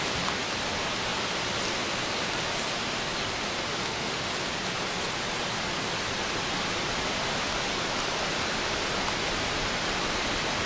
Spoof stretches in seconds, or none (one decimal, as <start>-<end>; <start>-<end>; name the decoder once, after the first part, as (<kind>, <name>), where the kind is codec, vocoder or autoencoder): 3.8-4.3 (autoencoder, DAC-VAE)